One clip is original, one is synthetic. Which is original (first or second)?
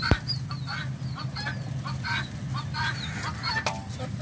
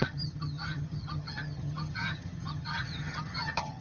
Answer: first